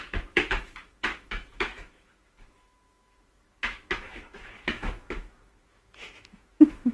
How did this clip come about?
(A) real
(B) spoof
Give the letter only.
B